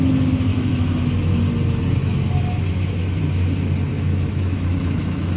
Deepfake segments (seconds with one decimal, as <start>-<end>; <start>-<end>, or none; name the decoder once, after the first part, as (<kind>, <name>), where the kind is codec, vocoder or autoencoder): 0.5-1.4 (autoencoder, DAC-VAE); 2.0-3.2; 3.9-5.4